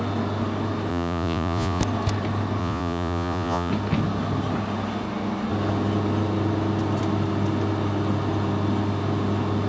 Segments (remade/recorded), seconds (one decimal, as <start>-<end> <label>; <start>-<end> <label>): 0.0-0.9 recorded; 0.9-1.8 remade; 1.8-2.6 recorded; 2.6-3.7 remade; 3.7-9.7 recorded